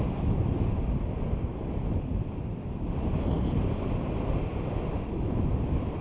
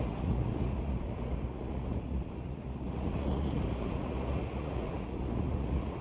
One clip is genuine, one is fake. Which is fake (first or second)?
second